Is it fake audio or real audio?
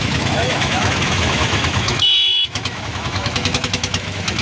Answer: fake